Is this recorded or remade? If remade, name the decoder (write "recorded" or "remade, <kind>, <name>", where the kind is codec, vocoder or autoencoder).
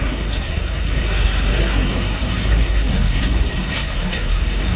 remade, codec, SNAC